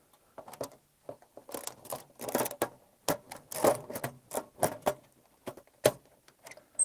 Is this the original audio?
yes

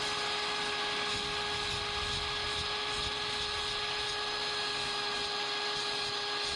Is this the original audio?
yes